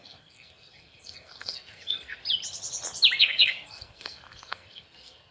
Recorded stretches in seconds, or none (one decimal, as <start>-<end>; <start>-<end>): 2.2-3.2